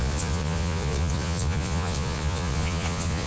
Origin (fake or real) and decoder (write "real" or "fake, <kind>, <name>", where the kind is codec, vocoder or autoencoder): fake, vocoder, Vocos